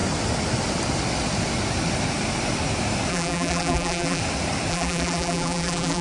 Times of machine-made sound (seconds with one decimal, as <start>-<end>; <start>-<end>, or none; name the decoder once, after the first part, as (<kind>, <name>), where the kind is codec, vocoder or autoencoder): 3.1-4.2 (vocoder, BigVGAN v2); 4.7-6.0

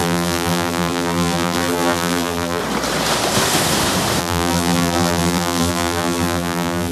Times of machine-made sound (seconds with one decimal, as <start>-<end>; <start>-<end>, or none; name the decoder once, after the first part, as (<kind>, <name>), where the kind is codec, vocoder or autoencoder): 0.0-2.6 (vocoder, BigVGAN v2); 4.2-6.9

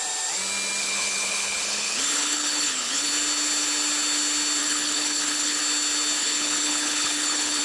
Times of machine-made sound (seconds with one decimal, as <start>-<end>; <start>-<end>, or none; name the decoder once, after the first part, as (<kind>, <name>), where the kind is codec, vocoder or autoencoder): 0.8-3.1 (codec, HILCodec); 4.6-5.6; 6.2-7.6

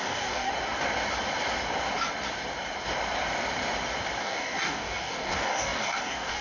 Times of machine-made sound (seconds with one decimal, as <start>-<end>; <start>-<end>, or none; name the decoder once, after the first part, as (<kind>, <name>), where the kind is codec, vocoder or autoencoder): 0.0-0.5 (codec, DAC); 4.2-6.4